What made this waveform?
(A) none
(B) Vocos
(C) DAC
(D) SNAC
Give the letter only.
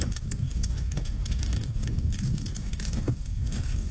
C